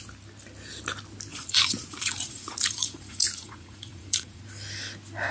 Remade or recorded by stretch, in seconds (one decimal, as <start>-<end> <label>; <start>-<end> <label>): 0.0-1.3 recorded; 1.3-4.4 remade; 4.4-5.3 recorded